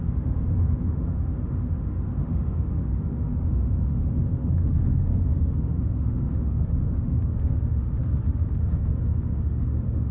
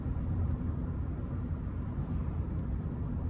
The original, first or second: second